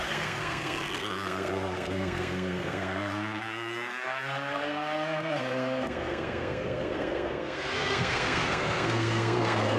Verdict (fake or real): fake